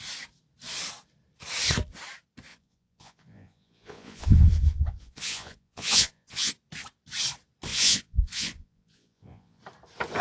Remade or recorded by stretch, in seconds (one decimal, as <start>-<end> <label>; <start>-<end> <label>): 0.0-2.5 recorded; 2.5-6.5 remade; 6.5-7.7 recorded; 7.7-9.6 remade; 9.6-10.2 recorded